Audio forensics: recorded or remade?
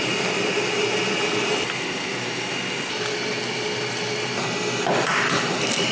recorded